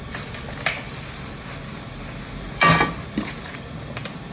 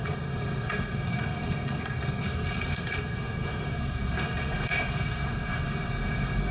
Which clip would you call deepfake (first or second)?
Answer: second